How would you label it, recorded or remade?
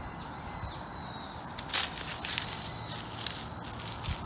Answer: recorded